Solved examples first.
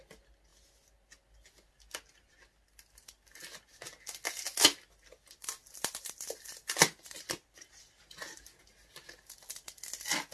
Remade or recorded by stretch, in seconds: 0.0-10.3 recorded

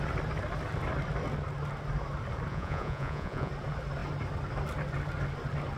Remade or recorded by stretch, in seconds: 0.0-2.5 recorded; 2.5-3.5 remade; 3.5-5.8 recorded

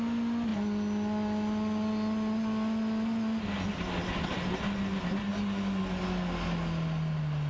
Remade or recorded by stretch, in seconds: 0.0-7.5 recorded

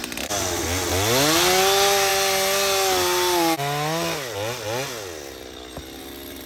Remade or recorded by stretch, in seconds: 0.0-6.5 recorded

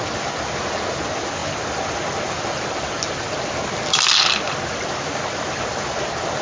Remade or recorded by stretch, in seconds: 0.0-6.4 recorded

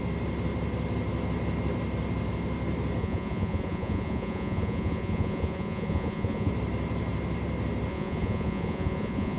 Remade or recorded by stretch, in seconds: 0.0-3.0 recorded; 3.0-6.5 remade; 6.5-7.9 recorded; 7.9-9.4 remade

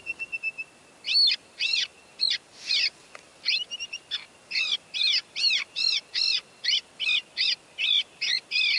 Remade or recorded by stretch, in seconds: 0.0-8.8 recorded

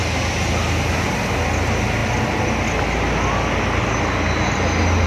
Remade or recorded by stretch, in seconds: 0.0-5.1 recorded